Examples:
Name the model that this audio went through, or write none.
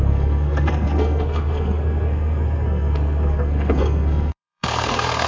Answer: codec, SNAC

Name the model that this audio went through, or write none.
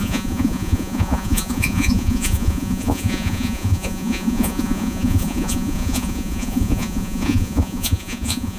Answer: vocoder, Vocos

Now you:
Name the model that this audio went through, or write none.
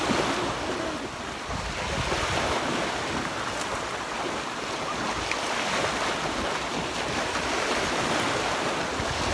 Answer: none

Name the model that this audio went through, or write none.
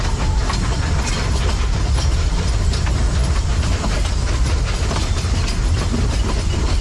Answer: none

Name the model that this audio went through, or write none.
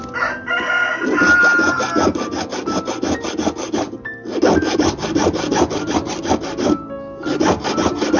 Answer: none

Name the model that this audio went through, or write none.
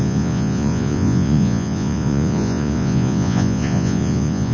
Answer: vocoder, Vocos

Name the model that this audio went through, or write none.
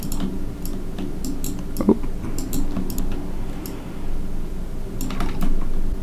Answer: none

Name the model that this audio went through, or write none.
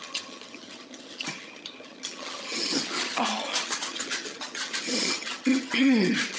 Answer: vocoder, HiFi-GAN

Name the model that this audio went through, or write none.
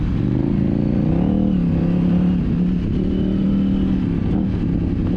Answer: none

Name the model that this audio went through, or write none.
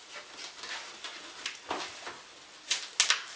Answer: none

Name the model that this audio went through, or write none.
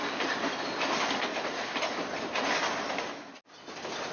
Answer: none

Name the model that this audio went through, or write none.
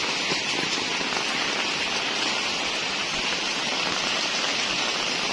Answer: none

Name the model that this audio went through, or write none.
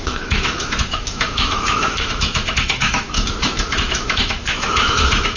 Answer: autoencoder, DAC-VAE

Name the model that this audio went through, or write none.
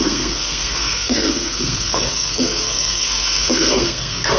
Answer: codec, SNAC